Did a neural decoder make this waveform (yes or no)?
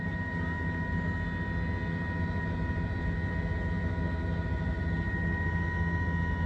no